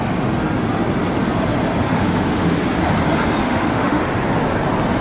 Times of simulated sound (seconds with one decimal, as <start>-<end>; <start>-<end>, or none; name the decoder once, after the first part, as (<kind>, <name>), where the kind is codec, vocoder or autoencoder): 1.9-2.6 (autoencoder, DAC-VAE); 3.4-4.0